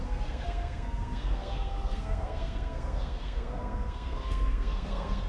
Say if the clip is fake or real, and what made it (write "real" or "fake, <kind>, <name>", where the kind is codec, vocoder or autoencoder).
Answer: fake, codec, SNAC